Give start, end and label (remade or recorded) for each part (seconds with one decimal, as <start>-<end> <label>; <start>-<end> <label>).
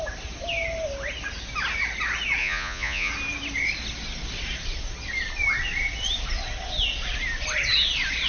0.0-2.4 recorded; 2.4-3.1 remade; 3.1-8.3 recorded